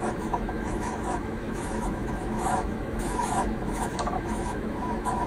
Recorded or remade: remade